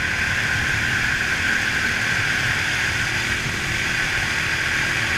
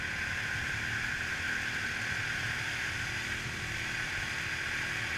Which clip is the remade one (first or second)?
first